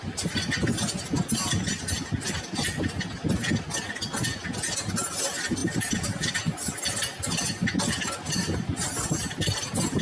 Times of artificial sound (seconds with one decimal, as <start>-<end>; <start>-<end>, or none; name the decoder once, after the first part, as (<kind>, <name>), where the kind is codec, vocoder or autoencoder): 5.6-10.0 (vocoder, BigVGAN v2)